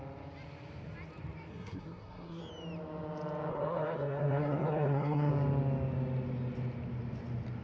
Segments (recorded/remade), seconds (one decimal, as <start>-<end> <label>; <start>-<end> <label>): 0.0-1.5 recorded; 1.5-2.4 remade; 2.4-3.5 recorded; 3.5-5.3 remade; 5.3-7.6 recorded